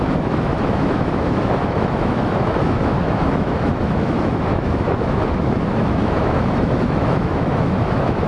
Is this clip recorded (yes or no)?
no